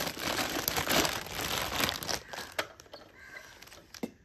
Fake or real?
real